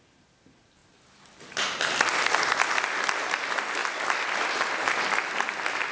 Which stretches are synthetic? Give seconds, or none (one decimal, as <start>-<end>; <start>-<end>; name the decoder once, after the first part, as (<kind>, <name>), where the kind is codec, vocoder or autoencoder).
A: 3.8-5.1 (vocoder, BigVGAN v2)